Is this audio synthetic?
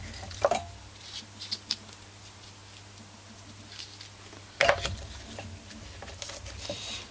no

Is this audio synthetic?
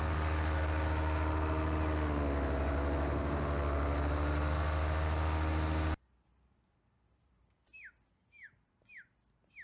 no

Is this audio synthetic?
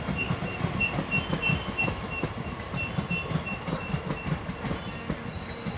no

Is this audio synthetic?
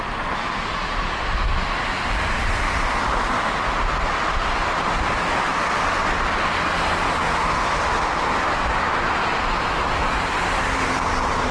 no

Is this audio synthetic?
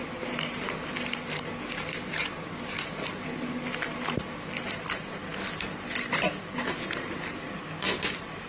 yes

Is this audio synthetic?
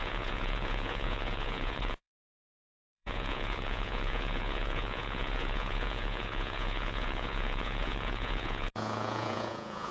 yes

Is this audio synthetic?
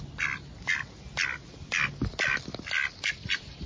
no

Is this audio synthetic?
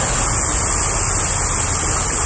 no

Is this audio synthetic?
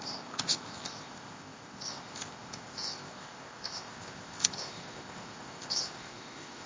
yes